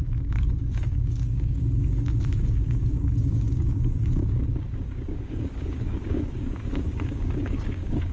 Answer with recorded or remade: remade